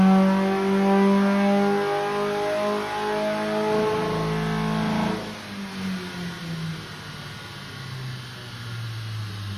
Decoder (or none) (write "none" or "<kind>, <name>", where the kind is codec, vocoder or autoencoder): none